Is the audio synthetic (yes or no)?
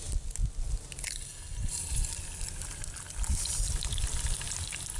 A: no